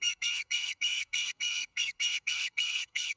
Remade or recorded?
remade